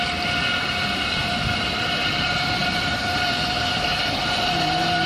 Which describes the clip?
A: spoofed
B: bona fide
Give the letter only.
B